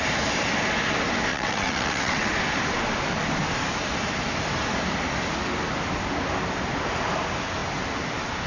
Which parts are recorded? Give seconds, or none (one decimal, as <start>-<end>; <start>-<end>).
0.0-1.3; 2.3-8.5